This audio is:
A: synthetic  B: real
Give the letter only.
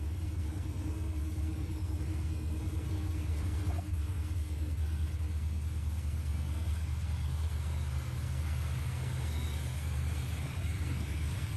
A